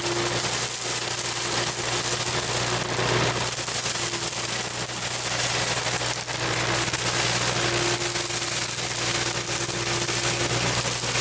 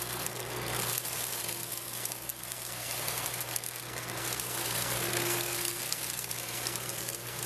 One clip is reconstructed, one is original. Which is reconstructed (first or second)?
second